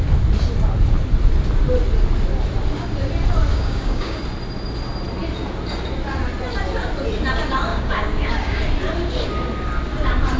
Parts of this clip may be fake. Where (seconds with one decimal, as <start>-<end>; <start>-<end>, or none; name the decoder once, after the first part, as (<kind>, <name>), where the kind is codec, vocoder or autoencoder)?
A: 3.5-4.2 (codec, DAC); 7.7-8.6